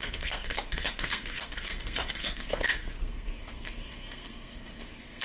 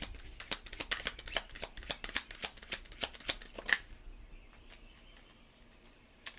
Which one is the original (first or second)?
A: second